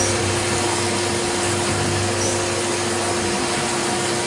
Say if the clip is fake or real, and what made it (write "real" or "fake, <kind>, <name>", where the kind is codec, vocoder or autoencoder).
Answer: real